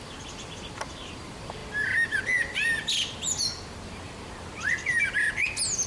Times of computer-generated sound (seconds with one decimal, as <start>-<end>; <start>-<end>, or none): none